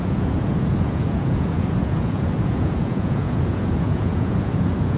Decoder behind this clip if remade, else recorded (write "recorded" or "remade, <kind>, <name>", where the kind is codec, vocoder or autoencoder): remade, vocoder, Vocos